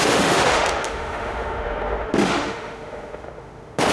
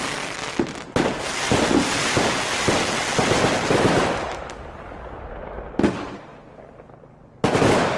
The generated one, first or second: first